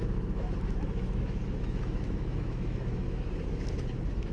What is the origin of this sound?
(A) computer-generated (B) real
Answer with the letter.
A